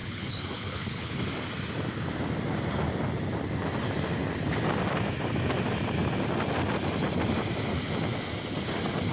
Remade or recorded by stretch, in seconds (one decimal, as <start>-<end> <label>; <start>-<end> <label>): 0.0-1.2 remade; 1.2-9.1 recorded